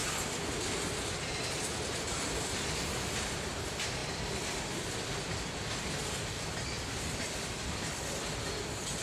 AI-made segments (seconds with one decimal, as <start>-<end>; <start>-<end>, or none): 0.0-9.0